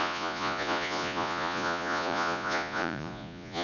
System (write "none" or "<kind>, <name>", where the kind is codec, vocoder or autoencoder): vocoder, Vocos